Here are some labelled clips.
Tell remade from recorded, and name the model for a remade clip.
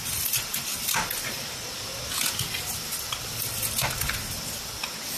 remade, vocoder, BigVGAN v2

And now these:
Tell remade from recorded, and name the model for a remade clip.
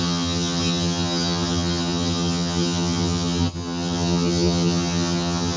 remade, vocoder, HiFi-GAN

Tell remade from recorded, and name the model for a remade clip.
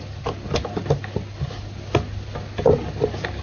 recorded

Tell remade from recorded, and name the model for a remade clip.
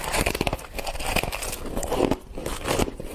recorded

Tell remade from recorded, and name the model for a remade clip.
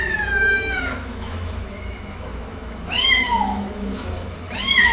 remade, autoencoder, DAC-VAE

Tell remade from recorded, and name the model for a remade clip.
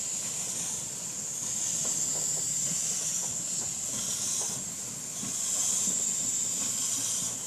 recorded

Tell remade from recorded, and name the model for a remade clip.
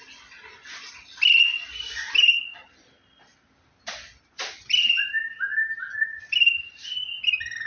remade, vocoder, BigVGAN v2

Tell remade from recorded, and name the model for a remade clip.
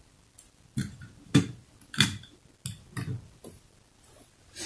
recorded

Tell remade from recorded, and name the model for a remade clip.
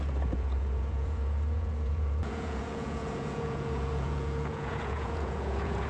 remade, vocoder, Vocos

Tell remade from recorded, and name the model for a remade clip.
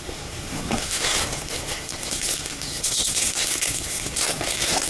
remade, codec, SNAC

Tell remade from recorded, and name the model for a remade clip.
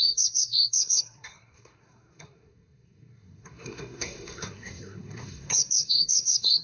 remade, codec, SNAC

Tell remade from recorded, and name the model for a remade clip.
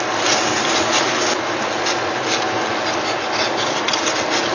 recorded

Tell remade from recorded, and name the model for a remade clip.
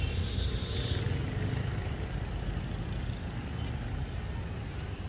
recorded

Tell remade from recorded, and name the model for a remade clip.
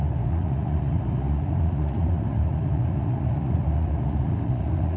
remade, vocoder, Vocos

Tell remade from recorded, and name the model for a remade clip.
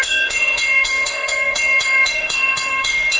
remade, autoencoder, DAC-VAE